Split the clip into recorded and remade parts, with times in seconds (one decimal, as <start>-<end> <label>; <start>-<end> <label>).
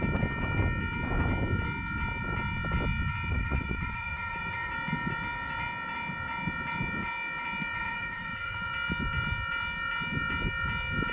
0.0-3.3 recorded; 3.3-4.7 remade; 4.7-7.8 recorded; 7.8-8.7 remade; 8.7-11.1 recorded